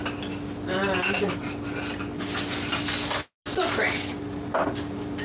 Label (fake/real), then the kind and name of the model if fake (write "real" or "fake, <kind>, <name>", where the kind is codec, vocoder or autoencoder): real